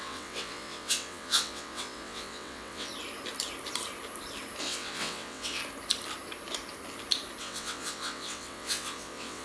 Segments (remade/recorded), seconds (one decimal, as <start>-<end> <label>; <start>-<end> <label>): 0.0-2.9 remade; 2.9-4.6 recorded; 4.6-5.6 remade; 5.6-7.4 recorded; 7.4-9.4 remade